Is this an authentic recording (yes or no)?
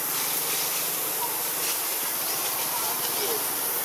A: no